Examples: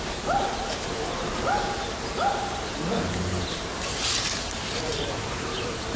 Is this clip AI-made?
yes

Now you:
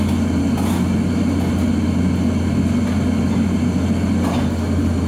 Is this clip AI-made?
no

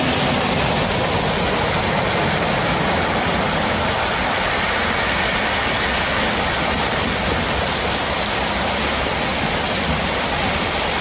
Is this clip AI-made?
no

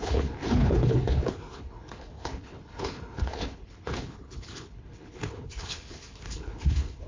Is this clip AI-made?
yes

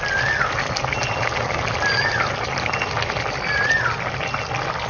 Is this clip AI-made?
no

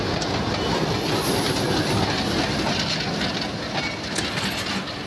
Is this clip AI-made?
no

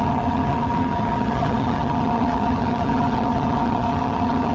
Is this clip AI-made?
yes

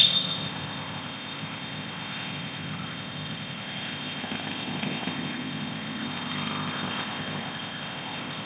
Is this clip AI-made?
yes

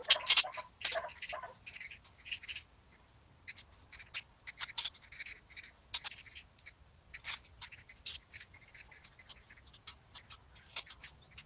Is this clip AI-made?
no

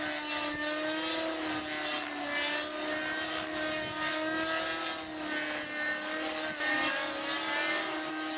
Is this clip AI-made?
no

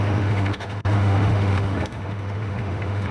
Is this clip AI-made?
yes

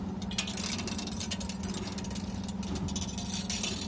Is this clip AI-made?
no